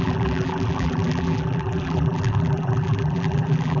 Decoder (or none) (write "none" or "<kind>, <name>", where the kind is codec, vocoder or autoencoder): vocoder, BigVGAN v2